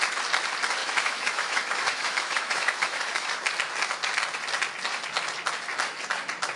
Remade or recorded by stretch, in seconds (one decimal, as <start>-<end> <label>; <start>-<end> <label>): 0.0-0.8 recorded; 0.8-3.3 remade; 3.3-6.6 recorded

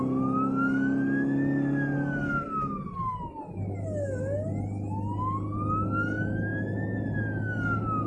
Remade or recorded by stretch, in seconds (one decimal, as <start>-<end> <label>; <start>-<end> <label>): 0.0-8.1 recorded

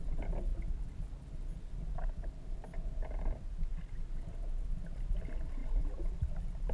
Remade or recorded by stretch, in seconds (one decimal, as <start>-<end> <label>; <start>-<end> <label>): 0.0-6.7 recorded

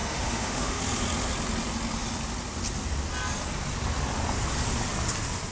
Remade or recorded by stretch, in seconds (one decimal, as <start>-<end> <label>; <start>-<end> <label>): 0.0-0.8 remade; 0.8-5.5 recorded

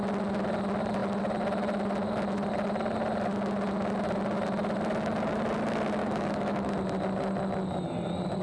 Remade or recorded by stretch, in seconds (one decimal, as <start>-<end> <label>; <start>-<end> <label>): 0.0-6.0 recorded; 6.0-6.7 remade; 6.7-8.4 recorded

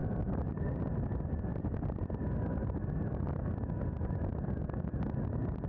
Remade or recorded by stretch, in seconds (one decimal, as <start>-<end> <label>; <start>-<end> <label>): 0.0-5.7 recorded

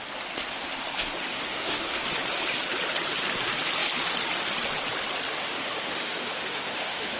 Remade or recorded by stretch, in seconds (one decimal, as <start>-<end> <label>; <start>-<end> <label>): 0.0-1.3 recorded; 1.3-2.0 remade; 2.0-5.4 recorded; 5.4-7.2 remade

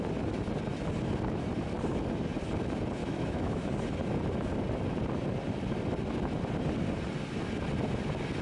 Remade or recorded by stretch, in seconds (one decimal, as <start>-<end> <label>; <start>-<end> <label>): 0.0-3.0 recorded; 3.0-3.7 remade; 3.7-8.4 recorded